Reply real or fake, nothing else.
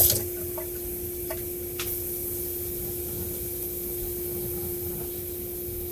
real